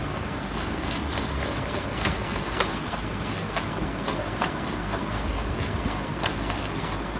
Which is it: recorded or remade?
remade